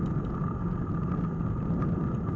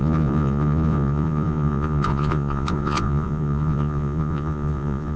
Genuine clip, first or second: first